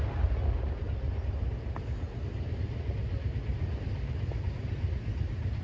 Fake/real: real